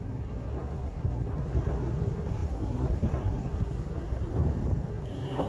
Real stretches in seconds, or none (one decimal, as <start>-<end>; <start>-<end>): 4.3-4.9